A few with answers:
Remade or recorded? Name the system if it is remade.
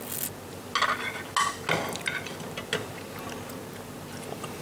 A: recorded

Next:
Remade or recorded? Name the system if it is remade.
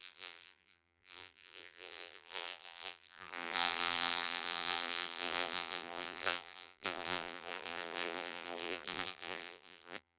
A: remade, vocoder, BigVGAN v2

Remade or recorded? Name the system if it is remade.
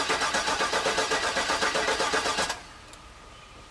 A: recorded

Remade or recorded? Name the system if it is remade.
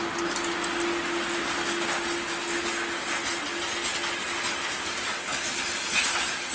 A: recorded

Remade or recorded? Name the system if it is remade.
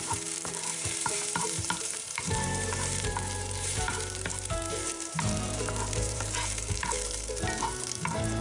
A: remade, vocoder, BigVGAN v2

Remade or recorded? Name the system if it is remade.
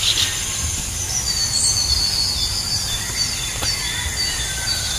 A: recorded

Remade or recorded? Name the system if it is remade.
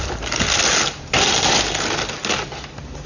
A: recorded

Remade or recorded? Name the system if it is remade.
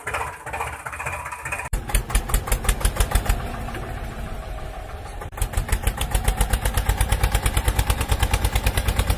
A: remade, vocoder, BigVGAN v2